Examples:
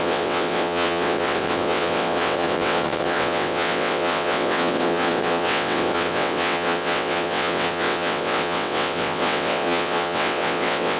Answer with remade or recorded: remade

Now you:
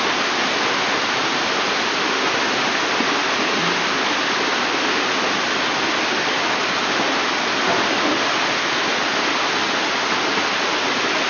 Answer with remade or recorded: recorded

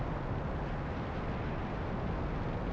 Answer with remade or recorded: recorded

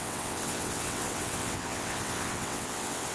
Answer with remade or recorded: remade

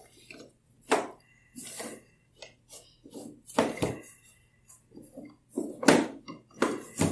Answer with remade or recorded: recorded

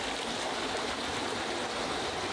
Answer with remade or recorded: recorded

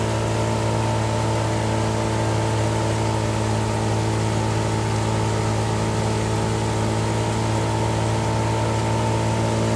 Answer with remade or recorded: recorded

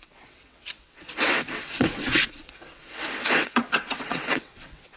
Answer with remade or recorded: remade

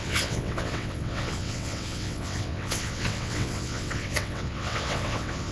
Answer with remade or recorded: remade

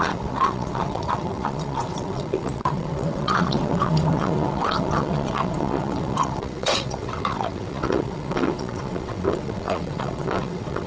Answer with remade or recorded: remade